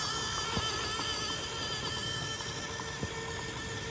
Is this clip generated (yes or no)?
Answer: no